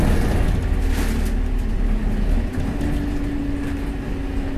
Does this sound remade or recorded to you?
recorded